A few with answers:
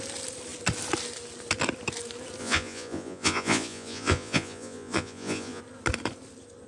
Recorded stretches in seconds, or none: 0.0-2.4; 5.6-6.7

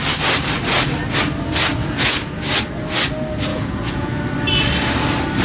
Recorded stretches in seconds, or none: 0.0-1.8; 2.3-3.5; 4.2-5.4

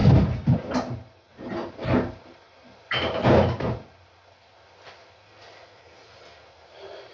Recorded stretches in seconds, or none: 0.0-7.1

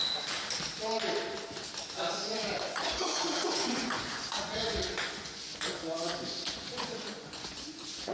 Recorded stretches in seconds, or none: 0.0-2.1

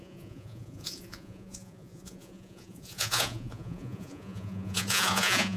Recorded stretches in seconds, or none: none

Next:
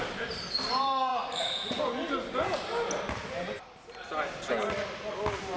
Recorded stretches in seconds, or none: 0.0-1.1; 1.8-5.6

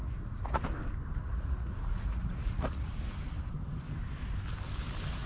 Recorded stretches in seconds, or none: 0.6-1.2; 2.9-5.3

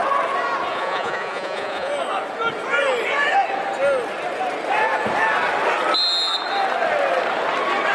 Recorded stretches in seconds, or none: 0.0-0.7; 1.9-7.9